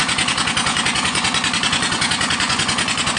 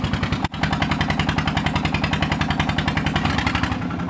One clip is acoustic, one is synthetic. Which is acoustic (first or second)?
second